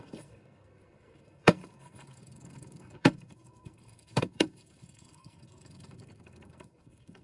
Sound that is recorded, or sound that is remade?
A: remade